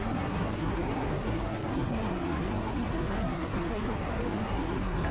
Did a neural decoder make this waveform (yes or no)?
yes